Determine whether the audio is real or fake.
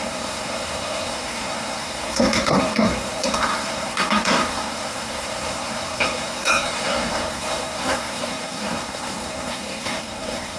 fake